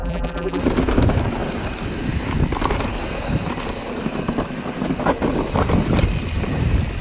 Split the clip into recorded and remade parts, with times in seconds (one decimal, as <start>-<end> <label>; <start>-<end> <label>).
0.0-0.6 remade; 0.6-7.0 recorded